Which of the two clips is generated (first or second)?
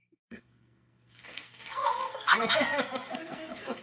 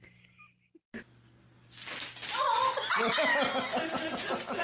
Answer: first